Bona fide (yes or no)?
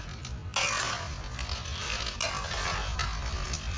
yes